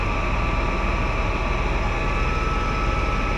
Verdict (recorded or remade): recorded